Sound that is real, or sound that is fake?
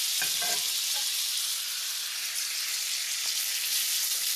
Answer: real